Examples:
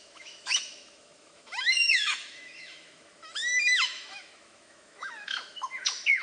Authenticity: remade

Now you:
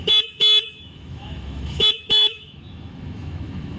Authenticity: remade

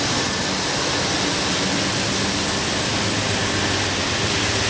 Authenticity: recorded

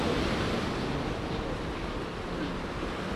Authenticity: recorded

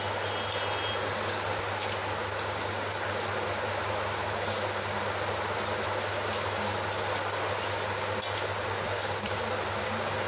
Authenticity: recorded